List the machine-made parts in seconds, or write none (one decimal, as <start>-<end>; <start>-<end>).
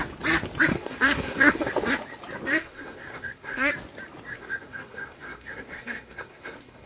0.7-1.7; 2.6-3.7; 4.3-6.9